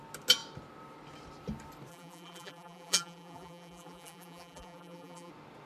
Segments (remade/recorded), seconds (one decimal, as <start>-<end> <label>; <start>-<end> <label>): 0.0-1.9 recorded; 1.9-5.3 remade; 5.3-5.7 recorded